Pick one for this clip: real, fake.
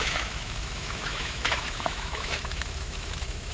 fake